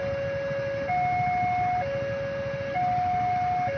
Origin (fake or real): real